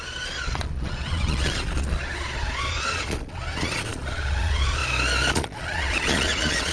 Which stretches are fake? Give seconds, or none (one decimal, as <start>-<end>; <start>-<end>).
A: 0.0-4.8; 5.3-6.7